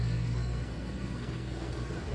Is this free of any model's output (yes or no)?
no